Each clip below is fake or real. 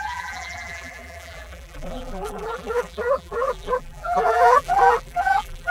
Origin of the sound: fake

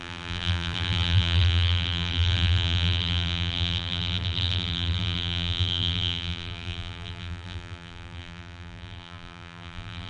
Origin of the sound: fake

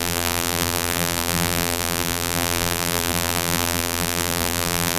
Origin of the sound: fake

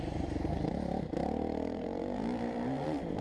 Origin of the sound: fake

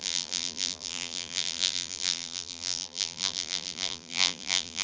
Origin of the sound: fake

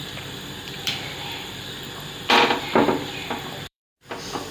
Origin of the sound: fake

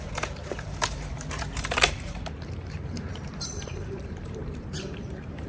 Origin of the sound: fake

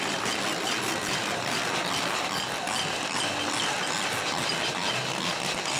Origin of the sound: real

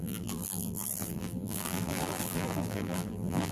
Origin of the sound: fake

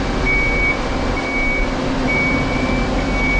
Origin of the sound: real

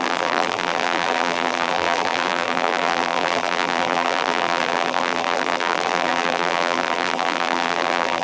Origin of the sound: fake